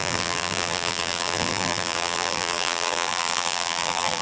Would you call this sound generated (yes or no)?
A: yes